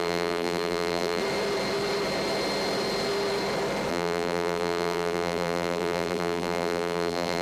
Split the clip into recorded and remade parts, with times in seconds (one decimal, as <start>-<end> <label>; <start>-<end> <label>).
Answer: 0.0-1.2 remade; 1.2-3.9 recorded; 3.9-7.4 remade